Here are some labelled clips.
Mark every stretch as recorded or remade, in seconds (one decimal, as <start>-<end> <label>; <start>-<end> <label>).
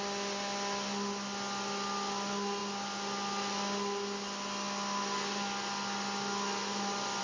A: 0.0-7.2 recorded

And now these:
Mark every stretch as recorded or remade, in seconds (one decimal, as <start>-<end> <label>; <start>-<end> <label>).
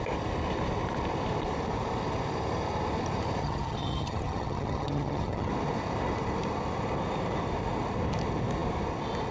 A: 0.0-3.4 recorded; 3.4-5.5 remade; 5.5-9.3 recorded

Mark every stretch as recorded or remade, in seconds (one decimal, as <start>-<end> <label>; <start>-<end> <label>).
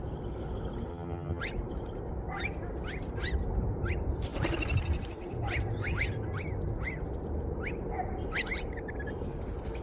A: 0.0-0.9 recorded; 0.9-1.4 remade; 1.4-9.8 recorded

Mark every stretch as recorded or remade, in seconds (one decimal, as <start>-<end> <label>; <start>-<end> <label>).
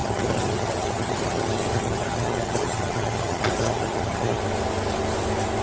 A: 0.0-4.4 remade; 4.4-5.6 recorded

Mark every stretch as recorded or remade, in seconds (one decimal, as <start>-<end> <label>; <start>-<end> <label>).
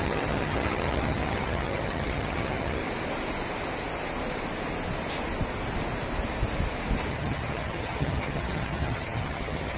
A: 0.0-2.8 remade; 2.8-7.1 recorded; 7.1-9.8 remade